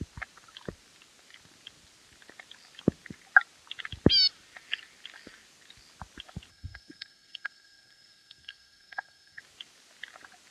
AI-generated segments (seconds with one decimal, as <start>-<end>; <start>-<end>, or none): 6.5-9.4